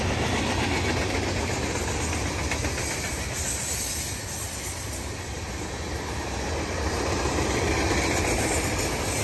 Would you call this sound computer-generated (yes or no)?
no